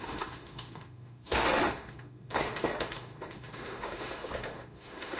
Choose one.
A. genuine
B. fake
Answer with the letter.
B